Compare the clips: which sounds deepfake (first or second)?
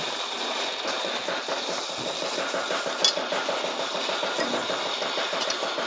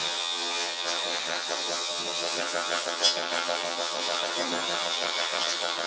second